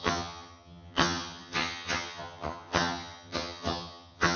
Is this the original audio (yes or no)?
no